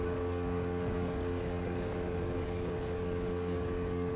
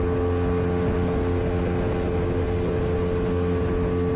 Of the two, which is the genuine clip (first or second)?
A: second